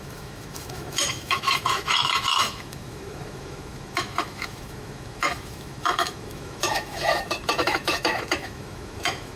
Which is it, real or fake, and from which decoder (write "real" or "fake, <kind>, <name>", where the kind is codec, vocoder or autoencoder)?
fake, autoencoder, DAC-VAE